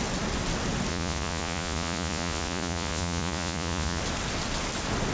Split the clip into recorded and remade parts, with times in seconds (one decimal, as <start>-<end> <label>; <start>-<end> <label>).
0.0-0.9 recorded; 0.9-4.0 remade; 4.0-5.1 recorded